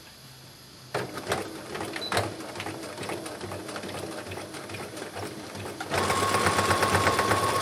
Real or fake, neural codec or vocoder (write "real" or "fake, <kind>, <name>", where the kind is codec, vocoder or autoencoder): fake, vocoder, BigVGAN v2